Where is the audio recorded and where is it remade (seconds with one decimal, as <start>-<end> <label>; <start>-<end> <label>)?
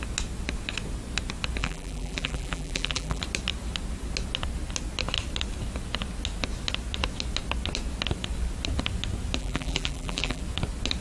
0.0-1.6 recorded; 1.6-3.2 remade; 3.2-9.4 recorded; 9.4-10.4 remade; 10.4-11.0 recorded